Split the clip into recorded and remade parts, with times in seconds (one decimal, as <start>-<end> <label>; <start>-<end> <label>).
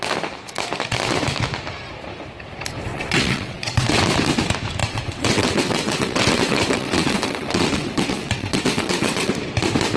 0.0-2.9 recorded; 2.9-4.0 remade; 4.0-4.8 recorded; 4.8-9.3 remade; 9.3-10.0 recorded